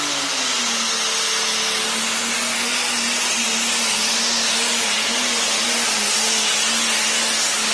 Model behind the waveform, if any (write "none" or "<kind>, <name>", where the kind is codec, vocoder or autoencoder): none